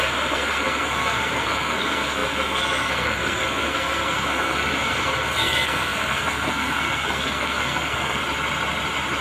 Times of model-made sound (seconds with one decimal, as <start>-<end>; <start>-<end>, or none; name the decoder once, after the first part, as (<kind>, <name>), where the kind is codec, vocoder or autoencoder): 0.0-8.2 (codec, SNAC)